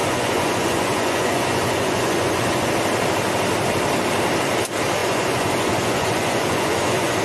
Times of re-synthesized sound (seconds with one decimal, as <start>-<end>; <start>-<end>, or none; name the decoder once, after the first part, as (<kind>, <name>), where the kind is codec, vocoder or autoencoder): 0.0-2.7 (vocoder, Vocos); 5.0-7.2